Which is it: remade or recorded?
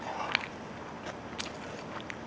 recorded